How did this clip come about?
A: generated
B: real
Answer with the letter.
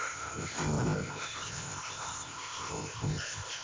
A